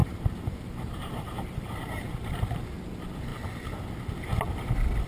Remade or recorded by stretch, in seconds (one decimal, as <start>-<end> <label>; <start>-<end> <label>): 0.0-2.5 remade; 2.5-5.1 recorded